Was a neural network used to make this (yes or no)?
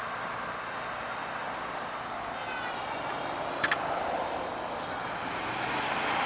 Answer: no